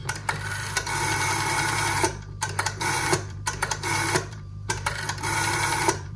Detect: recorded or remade remade